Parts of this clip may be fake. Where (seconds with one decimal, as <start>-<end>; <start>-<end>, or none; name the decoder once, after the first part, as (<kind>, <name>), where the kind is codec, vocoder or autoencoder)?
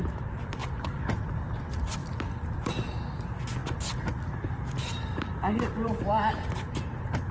0.6-1.2 (vocoder, BigVGAN v2); 2.0-2.7; 4.8-6.3